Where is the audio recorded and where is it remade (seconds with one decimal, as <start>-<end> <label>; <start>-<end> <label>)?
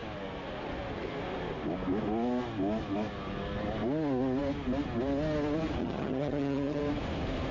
0.0-5.8 recorded; 5.8-6.8 remade; 6.8-7.5 recorded